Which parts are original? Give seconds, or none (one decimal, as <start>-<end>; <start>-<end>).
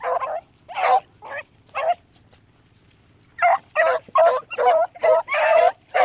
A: 0.9-4.5